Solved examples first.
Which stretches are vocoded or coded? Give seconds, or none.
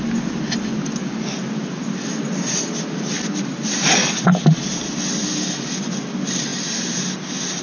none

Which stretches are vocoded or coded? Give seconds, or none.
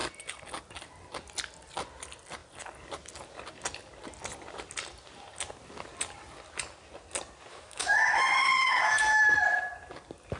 7.5-9.2 (autoencoder, DAC-VAE)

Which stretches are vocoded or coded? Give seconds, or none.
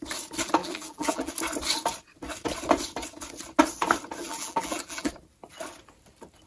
0.6-1.3 (vocoder, BigVGAN v2); 4.2-5.1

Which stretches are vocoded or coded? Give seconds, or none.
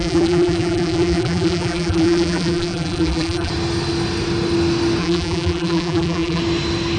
0.0-3.5 (vocoder, BigVGAN v2); 5.0-6.4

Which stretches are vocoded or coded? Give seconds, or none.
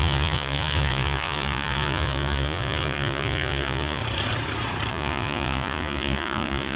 0.0-4.0 (vocoder, Vocos); 4.9-6.8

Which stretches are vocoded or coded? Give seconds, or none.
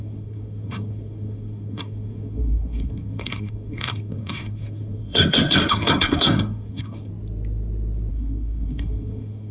0.0-7.1 (codec, SNAC); 8.1-9.5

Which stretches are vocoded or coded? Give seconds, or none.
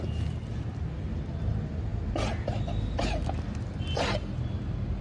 none